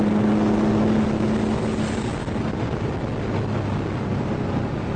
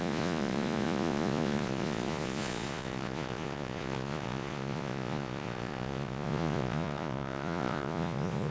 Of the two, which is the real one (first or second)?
first